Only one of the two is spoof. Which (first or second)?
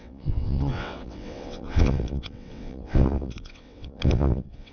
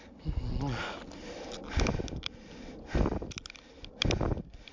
first